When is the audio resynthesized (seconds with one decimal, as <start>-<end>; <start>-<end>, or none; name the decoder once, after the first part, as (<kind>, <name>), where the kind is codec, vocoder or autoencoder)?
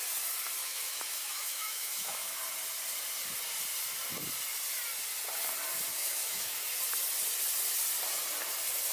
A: 0.6-2.4 (autoencoder, DAC-VAE); 5.9-6.7